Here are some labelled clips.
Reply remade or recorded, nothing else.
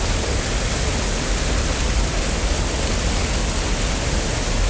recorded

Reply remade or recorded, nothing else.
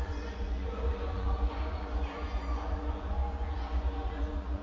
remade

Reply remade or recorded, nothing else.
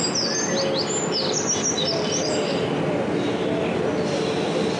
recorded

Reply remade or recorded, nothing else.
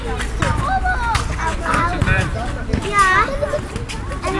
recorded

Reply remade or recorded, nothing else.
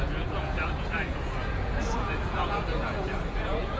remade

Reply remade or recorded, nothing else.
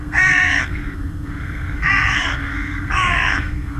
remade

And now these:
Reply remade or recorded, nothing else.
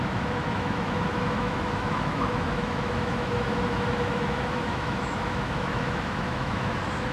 remade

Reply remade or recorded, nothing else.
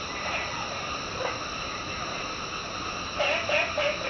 recorded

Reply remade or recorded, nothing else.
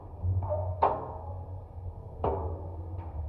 remade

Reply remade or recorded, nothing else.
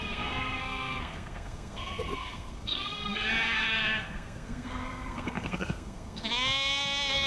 remade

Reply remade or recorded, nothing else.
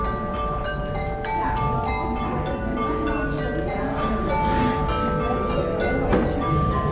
recorded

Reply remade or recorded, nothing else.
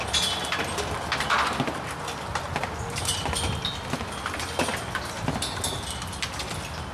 recorded